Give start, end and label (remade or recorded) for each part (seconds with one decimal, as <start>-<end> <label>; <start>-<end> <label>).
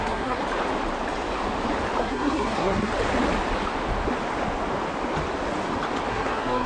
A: 0.0-0.4 remade; 0.4-2.0 recorded; 2.0-2.9 remade; 2.9-6.1 recorded; 6.1-6.7 remade